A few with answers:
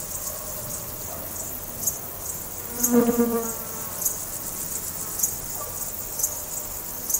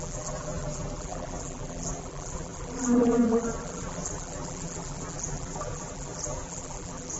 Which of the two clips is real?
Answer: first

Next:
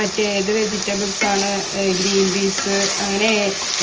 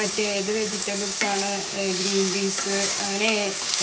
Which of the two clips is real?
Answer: first